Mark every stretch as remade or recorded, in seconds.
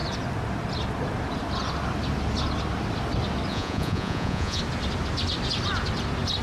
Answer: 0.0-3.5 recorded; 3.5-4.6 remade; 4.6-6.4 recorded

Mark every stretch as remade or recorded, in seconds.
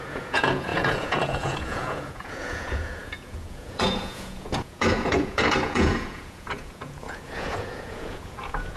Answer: 0.0-8.8 remade